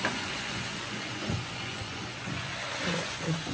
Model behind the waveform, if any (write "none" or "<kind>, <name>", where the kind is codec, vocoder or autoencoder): vocoder, Vocos